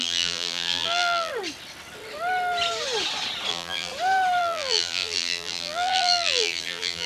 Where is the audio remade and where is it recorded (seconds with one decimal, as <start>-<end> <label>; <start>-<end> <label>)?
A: 0.0-1.3 remade; 1.3-3.5 recorded; 3.5-3.9 remade; 3.9-4.4 recorded; 4.4-7.1 remade

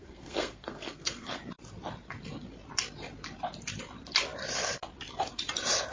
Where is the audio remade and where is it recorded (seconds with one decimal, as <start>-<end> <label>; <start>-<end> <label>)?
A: 0.0-1.4 remade; 1.4-5.9 recorded

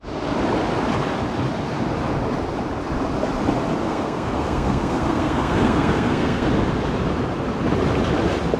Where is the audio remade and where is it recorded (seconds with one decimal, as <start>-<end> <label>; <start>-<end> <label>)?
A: 0.0-3.8 recorded; 3.8-6.5 remade; 6.5-8.6 recorded

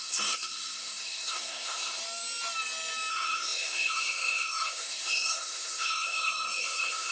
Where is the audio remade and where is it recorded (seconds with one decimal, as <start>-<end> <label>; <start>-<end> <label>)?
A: 0.0-2.0 remade; 2.0-3.1 recorded; 3.1-7.1 remade

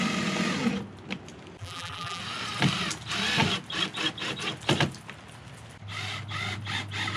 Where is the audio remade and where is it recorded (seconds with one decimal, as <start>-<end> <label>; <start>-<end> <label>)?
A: 0.0-1.6 recorded; 1.6-2.2 remade; 2.2-7.2 recorded

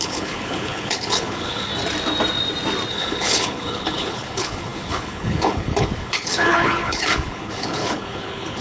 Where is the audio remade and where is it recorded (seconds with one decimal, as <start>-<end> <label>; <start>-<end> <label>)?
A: 0.0-1.7 remade; 1.7-2.9 recorded; 2.9-8.6 remade

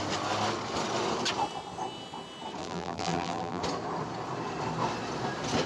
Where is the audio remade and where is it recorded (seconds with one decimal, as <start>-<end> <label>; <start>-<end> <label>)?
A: 0.0-2.6 recorded; 2.6-3.6 remade; 3.6-5.7 recorded